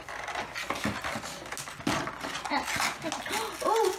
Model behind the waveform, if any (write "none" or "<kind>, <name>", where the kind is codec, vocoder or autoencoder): none